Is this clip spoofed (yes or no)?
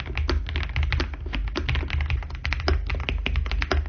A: no